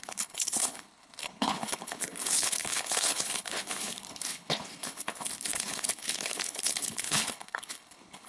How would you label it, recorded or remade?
remade